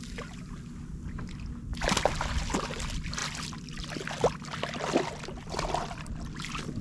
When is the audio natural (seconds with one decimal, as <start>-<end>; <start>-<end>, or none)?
0.0-6.8